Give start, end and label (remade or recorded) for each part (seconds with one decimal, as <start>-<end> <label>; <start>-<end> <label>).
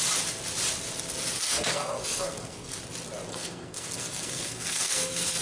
0.0-1.4 recorded; 1.4-2.8 remade; 2.8-3.3 recorded; 3.3-5.4 remade